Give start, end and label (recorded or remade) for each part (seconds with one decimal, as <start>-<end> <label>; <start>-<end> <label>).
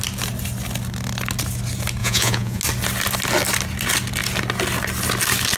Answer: 0.0-2.0 recorded; 2.0-2.6 remade; 2.6-5.6 recorded